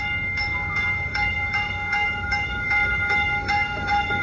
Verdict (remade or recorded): remade